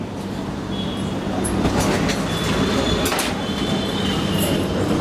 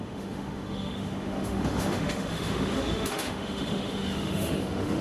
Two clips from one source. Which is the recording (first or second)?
first